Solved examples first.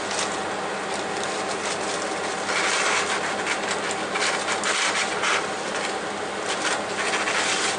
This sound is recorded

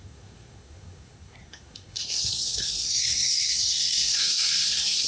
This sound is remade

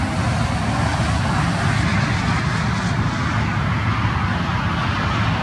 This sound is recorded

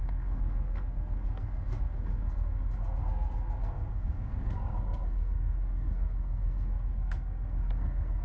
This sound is remade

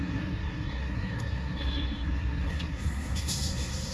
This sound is remade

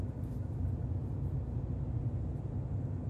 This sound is recorded